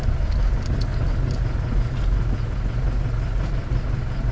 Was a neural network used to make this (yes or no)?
no